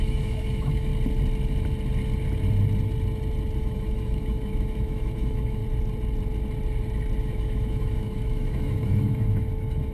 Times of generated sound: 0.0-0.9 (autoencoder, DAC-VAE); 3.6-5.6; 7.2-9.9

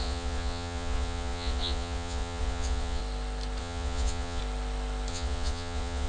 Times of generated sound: 0.0-3.0 (vocoder, Vocos); 3.6-4.4; 5.1-6.1